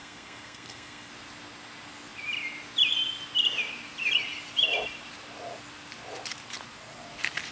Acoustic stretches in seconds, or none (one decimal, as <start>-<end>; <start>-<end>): 1.1-7.5